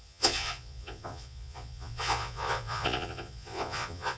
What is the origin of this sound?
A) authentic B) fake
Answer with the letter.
B